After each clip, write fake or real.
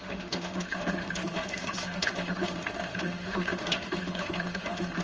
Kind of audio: fake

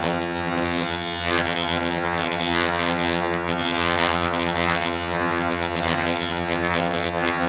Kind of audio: fake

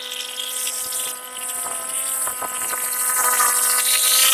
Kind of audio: real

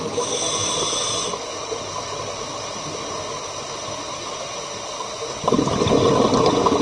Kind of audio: real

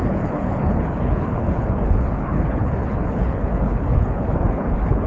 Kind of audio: fake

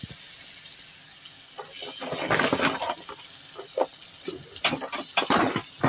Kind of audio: real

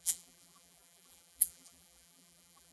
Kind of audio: fake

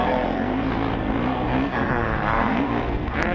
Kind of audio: fake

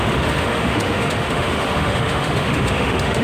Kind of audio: fake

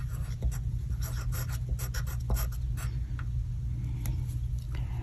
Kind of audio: real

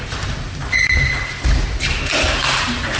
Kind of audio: real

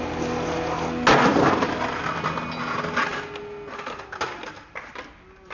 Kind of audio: real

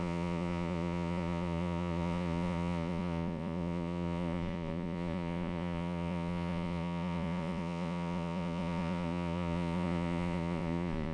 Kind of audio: fake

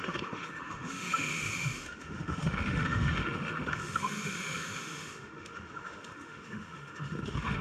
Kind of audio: fake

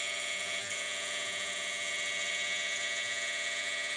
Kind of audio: fake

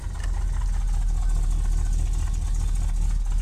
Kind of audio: real